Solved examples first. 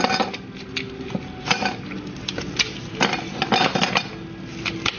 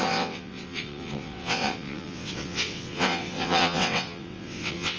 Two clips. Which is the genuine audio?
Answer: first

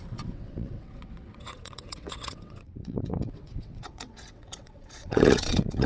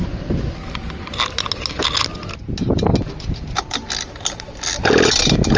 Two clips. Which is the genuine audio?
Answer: second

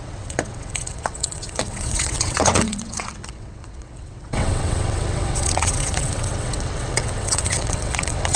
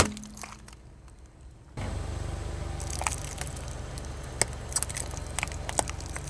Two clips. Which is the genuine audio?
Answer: second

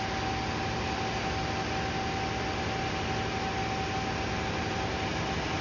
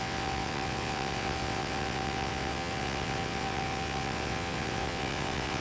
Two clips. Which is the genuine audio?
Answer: first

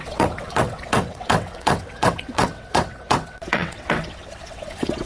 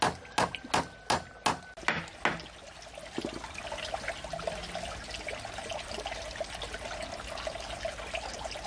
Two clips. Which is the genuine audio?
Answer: second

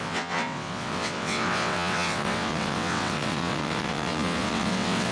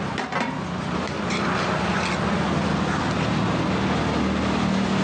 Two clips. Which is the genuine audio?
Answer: second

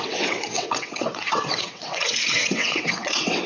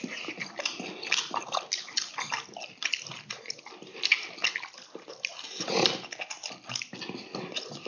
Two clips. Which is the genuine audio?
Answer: second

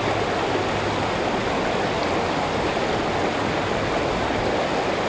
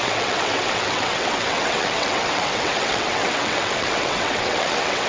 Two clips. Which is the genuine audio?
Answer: first